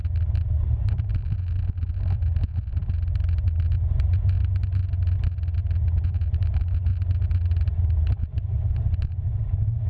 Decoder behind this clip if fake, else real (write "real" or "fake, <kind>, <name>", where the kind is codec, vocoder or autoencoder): real